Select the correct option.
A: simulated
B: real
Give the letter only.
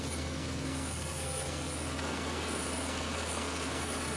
A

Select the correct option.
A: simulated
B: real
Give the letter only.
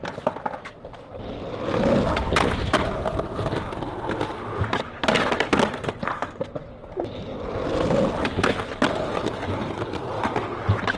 B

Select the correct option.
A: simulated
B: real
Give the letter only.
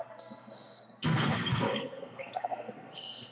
A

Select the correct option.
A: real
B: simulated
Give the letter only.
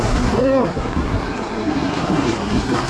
B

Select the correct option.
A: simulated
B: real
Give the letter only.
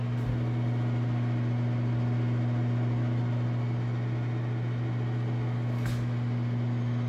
B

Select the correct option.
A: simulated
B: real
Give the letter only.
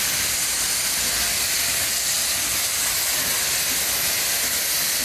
B